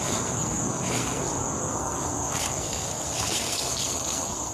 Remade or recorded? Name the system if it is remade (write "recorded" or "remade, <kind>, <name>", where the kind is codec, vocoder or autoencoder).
remade, codec, SNAC